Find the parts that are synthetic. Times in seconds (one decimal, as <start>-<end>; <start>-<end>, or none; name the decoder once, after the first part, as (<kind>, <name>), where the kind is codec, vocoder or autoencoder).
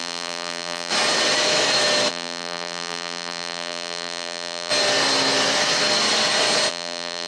0.0-0.9 (vocoder, BigVGAN v2); 2.1-4.7; 6.7-7.3